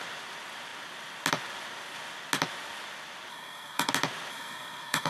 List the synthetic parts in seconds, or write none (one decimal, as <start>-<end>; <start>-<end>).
3.3-3.9; 4.3-5.1

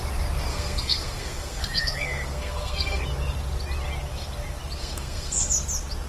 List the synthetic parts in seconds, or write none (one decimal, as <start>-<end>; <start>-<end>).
0.5-3.0; 4.8-5.5

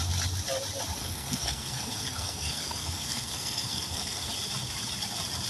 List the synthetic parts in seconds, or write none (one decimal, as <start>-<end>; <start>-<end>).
1.0-4.3

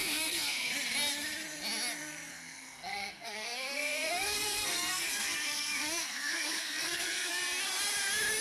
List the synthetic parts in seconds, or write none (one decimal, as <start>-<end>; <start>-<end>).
0.0-0.7; 2.3-7.3

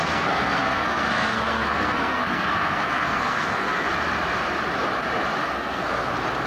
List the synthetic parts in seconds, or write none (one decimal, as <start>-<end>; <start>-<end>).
0.0-3.9; 5.4-6.1